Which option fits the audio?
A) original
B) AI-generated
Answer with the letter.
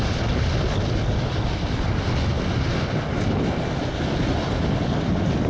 A